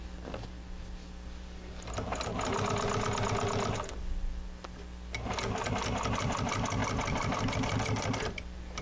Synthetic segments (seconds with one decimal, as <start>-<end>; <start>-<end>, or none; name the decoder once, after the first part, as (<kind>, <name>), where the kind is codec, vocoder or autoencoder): none